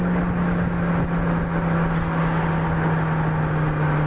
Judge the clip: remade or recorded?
recorded